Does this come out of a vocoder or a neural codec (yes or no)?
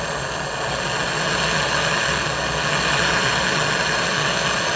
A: no